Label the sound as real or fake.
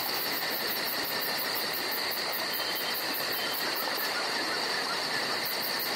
real